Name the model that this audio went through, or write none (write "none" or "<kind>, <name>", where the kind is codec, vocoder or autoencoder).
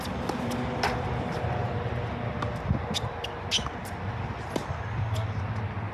none